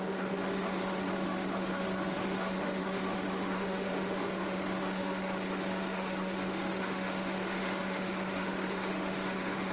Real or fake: fake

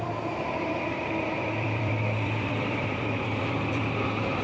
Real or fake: fake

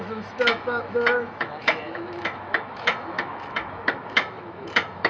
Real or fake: fake